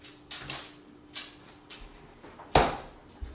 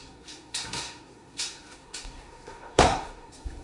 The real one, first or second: first